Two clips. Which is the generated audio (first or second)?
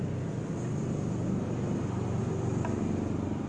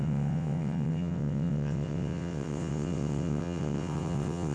second